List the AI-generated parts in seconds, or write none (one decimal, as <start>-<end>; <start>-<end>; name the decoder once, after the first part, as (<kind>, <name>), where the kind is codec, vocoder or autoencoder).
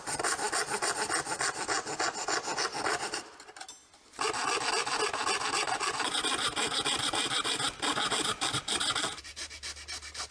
none